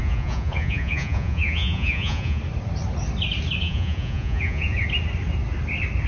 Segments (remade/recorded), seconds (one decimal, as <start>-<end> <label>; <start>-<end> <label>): 0.0-2.4 remade; 2.4-3.6 recorded; 3.6-4.8 remade; 4.8-6.1 recorded